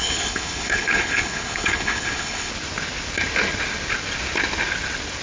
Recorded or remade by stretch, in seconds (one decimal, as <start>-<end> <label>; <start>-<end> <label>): 0.0-2.5 remade; 2.5-5.2 recorded